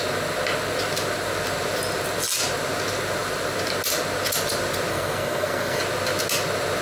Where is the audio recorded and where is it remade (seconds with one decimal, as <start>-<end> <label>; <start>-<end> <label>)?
0.0-4.9 recorded; 4.9-5.8 remade; 5.8-6.8 recorded